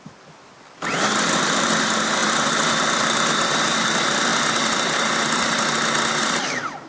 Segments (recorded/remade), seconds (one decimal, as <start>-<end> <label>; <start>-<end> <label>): 0.0-4.3 remade; 4.3-6.2 recorded; 6.2-6.9 remade